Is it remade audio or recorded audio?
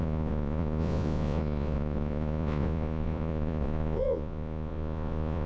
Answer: remade